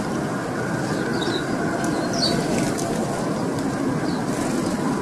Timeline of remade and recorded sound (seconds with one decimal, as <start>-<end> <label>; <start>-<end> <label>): 0.0-5.0 recorded